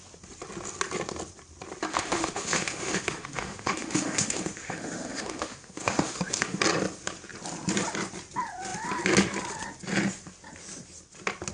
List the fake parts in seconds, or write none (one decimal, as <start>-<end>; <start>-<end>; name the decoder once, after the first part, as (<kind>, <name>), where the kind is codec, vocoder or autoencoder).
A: 1.9-6.6 (autoencoder, DAC-VAE)